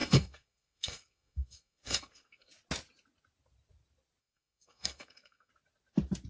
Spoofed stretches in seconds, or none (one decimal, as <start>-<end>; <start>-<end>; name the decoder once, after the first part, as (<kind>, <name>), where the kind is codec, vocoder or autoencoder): 0.0-2.5 (codec, SNAC); 4.2-5.5